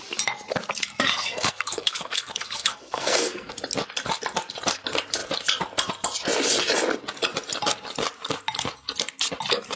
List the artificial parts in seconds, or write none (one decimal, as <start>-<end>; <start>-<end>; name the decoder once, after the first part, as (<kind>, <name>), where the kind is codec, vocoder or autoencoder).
0.9-3.5 (codec, SNAC)